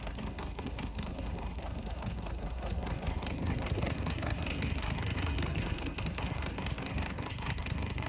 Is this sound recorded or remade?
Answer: remade